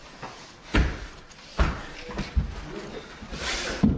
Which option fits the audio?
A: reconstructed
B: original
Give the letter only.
B